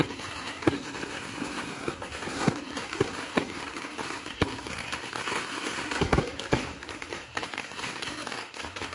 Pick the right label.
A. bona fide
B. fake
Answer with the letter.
B